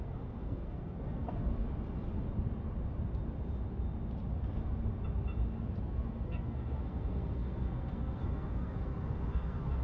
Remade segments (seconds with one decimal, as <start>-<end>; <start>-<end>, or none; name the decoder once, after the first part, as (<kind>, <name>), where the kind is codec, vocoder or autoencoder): 0.0-1.5 (codec, SNAC); 5.8-9.8